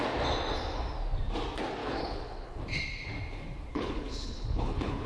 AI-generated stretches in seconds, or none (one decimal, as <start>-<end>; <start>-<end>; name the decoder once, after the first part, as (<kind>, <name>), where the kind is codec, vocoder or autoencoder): 1.8-2.6 (codec, HILCodec); 3.7-5.1